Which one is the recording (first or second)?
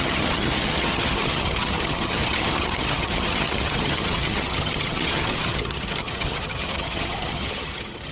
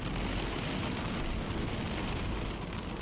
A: second